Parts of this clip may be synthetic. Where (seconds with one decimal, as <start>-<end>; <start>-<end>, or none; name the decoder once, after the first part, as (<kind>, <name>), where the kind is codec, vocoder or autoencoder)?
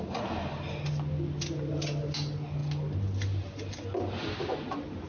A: none